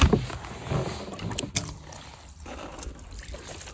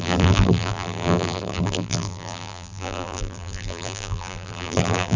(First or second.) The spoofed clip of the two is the second